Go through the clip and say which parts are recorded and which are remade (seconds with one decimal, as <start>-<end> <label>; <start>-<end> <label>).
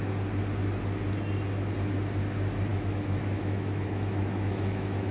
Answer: 0.0-2.7 recorded; 2.7-5.1 remade